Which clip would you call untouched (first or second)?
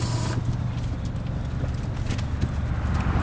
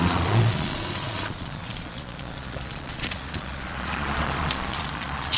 first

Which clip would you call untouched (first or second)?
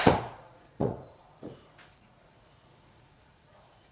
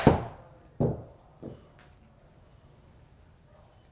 second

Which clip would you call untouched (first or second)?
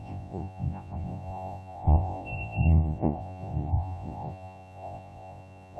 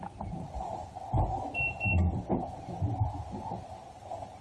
second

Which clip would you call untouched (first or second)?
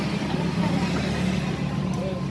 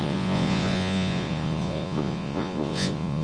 first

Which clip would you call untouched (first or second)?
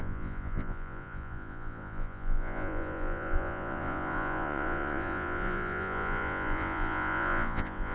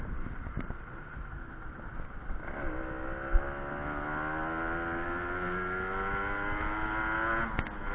second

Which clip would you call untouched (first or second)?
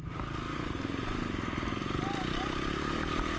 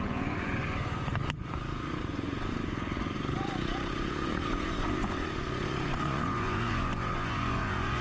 first